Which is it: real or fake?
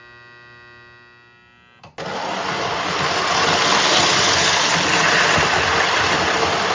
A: real